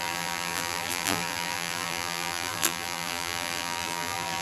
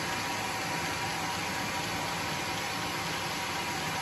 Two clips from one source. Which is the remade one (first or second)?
first